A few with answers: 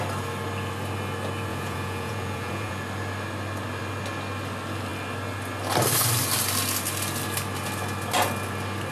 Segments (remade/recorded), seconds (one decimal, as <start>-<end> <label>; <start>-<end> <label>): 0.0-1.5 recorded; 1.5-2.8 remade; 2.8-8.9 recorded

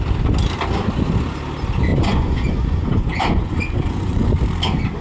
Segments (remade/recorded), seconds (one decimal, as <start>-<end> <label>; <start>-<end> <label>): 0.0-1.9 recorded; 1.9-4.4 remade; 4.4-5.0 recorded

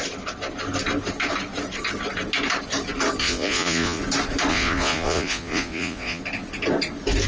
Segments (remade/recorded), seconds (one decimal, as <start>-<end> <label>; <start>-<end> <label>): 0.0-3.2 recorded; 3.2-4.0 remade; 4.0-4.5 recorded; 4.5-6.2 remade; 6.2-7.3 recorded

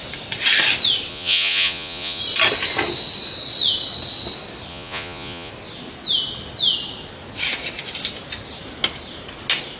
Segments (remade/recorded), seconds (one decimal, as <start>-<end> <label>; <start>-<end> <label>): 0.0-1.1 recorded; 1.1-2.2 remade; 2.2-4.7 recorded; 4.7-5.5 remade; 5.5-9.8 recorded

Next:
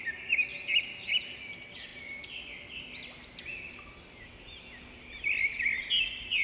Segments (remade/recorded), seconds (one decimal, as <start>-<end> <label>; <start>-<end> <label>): 0.0-6.4 recorded

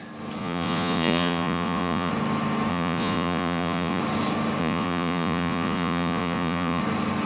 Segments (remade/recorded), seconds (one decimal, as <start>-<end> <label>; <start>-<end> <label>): 0.0-0.4 recorded; 0.4-2.1 remade; 2.1-2.7 recorded; 2.7-4.0 remade; 4.0-4.6 recorded; 4.6-6.8 remade; 6.8-7.3 recorded

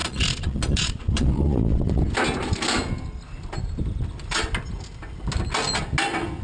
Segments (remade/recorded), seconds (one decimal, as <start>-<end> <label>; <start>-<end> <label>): 0.0-2.0 remade; 2.0-6.4 recorded